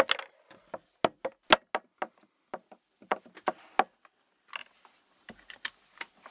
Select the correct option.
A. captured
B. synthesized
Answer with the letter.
A